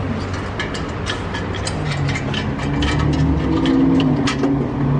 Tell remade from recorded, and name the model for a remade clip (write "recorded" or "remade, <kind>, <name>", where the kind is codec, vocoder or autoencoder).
recorded